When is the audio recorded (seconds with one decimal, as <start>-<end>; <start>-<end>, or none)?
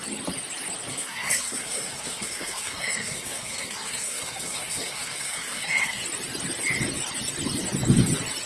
0.0-0.9; 6.0-8.5